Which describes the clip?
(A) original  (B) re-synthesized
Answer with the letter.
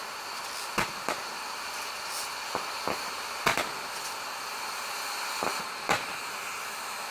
A